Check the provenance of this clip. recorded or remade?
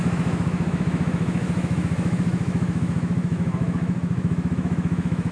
remade